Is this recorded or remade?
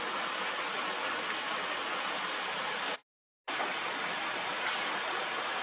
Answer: recorded